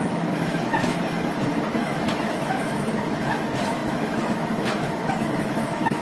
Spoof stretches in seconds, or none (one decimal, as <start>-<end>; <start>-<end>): 0.0-1.0; 1.8-6.0